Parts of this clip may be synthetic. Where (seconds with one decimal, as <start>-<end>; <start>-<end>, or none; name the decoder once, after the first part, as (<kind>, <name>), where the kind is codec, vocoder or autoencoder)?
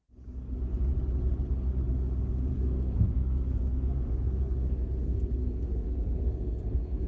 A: 2.5-7.1 (codec, SNAC)